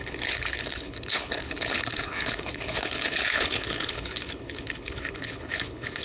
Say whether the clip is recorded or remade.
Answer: remade